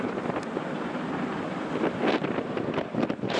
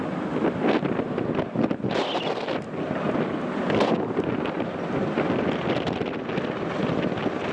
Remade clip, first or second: first